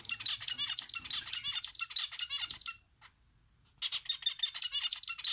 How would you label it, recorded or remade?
recorded